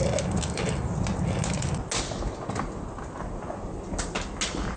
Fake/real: real